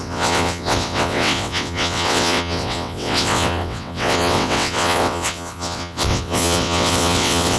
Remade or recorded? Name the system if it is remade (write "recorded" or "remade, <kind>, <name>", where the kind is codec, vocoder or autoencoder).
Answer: remade, vocoder, WaveNeXt